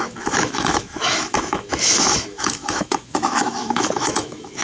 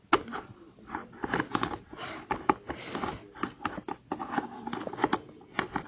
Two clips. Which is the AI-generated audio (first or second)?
first